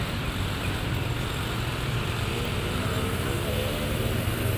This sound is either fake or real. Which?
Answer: real